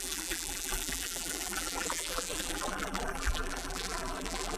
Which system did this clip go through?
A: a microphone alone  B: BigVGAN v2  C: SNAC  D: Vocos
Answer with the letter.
B